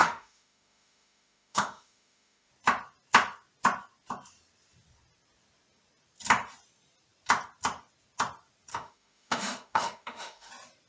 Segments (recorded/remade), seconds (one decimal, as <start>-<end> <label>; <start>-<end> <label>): 0.0-2.5 remade; 2.5-8.7 recorded; 8.7-10.5 remade; 10.5-10.9 recorded